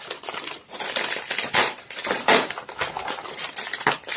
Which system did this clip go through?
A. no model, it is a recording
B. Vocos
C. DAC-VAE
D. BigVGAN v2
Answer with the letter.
D